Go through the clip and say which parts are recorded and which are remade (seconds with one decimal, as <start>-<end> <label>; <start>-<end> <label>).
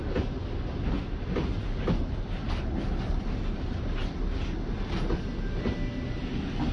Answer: 0.0-6.7 recorded